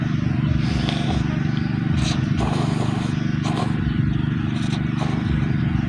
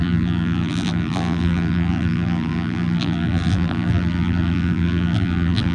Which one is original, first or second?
first